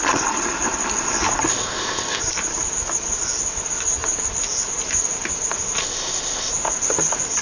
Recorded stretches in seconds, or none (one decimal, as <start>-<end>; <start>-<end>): 0.0-1.5; 2.2-5.8; 6.5-7.4